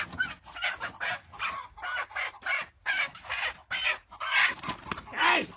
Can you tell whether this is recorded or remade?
recorded